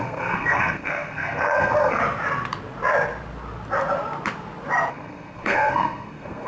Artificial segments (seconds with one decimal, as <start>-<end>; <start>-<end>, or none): 0.0-2.0; 4.9-6.5